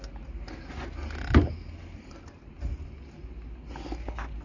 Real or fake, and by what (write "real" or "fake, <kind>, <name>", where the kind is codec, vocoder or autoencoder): real